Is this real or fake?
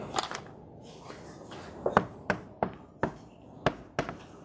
real